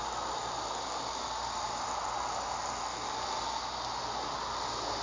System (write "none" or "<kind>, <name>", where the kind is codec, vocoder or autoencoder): none